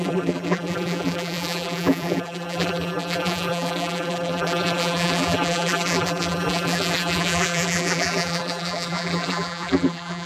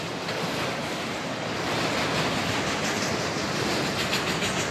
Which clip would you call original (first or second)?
second